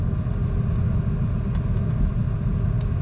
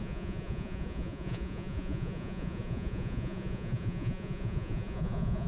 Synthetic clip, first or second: second